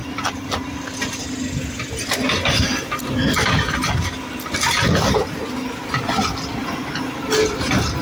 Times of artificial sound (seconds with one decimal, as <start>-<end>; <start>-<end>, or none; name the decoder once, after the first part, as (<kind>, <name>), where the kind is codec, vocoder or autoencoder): none